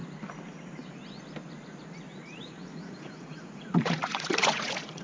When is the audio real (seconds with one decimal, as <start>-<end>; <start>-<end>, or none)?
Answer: 0.0-2.1